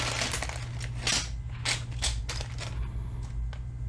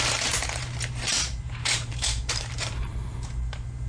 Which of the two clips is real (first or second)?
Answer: first